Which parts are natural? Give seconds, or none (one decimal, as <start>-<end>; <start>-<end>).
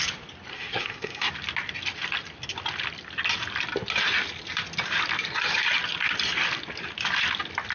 0.0-0.5; 1.3-7.7